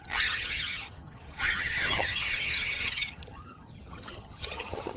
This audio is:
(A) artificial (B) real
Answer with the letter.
A